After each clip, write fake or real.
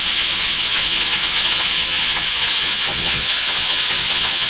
fake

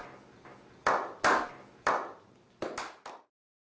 real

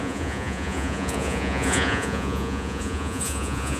fake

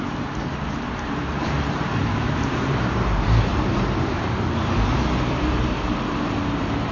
fake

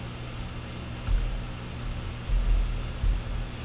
real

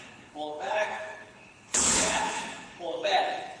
fake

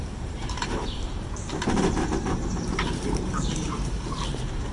fake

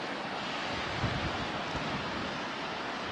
real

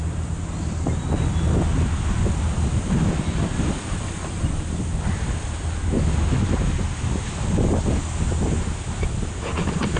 real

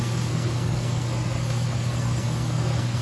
fake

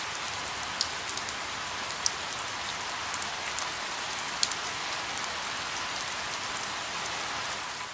real